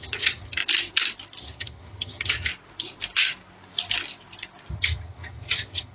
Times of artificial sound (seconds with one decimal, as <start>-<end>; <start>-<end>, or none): 0.0-0.6; 1.4-2.5; 4.7-5.9